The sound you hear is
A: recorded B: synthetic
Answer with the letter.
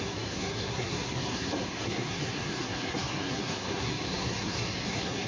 B